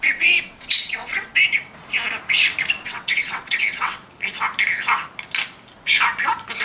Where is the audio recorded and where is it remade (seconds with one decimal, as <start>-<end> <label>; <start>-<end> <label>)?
0.0-1.4 remade; 1.4-2.8 recorded; 2.8-4.0 remade; 4.0-6.6 recorded